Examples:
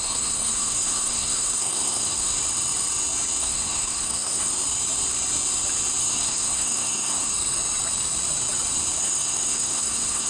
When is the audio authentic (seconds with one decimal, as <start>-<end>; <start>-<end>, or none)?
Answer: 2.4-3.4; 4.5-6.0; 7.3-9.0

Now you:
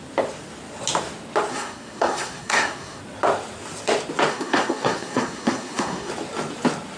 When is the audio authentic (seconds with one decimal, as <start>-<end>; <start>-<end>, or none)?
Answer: 0.0-1.5; 3.0-4.3; 6.1-7.0

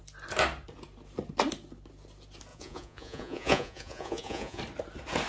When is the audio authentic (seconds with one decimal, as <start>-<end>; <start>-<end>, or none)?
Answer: 0.0-2.5; 4.6-5.3